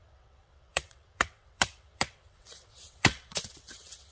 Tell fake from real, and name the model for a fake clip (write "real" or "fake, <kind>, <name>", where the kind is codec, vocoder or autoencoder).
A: fake, vocoder, WaveNeXt